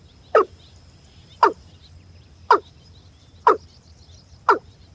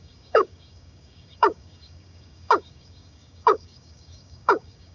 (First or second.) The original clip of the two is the first